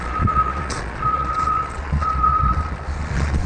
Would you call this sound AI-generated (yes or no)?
yes